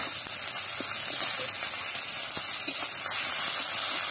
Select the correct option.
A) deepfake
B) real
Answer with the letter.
B